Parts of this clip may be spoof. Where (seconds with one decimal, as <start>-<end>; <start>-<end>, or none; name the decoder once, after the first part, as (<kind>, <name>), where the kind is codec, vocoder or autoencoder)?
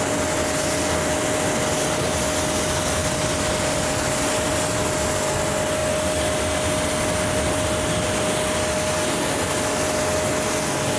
none